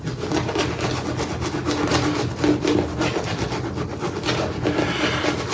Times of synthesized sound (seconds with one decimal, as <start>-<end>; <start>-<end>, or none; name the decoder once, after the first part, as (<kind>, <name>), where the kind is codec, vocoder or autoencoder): none